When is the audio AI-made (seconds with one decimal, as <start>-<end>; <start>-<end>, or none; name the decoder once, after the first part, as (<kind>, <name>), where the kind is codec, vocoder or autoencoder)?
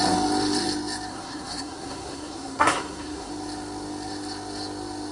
1.1-3.3 (codec, SNAC)